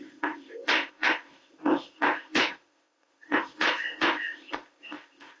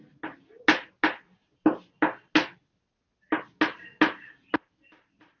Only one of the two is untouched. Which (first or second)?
second